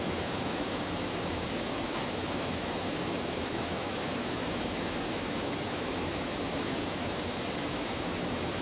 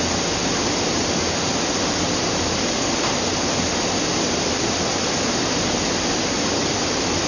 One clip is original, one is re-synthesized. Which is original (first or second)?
second